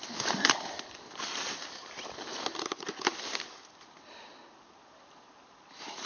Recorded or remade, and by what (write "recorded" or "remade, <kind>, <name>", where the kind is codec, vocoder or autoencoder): recorded